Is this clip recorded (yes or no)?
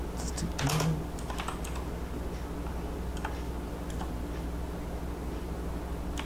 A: yes